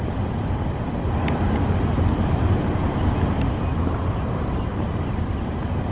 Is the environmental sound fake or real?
real